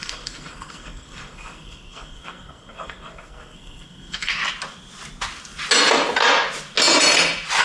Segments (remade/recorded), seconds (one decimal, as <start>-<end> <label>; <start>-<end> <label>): 0.0-4.4 remade; 4.4-7.6 recorded